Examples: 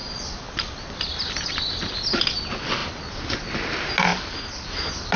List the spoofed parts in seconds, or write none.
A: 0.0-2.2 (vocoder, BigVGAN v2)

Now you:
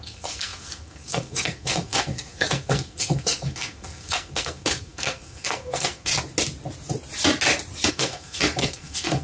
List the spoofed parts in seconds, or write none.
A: 0.0-6.1 (codec, SNAC); 7.9-9.2